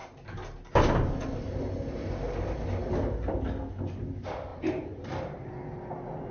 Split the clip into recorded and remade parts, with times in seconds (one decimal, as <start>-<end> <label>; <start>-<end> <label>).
0.0-4.5 recorded; 4.5-5.5 remade; 5.5-6.3 recorded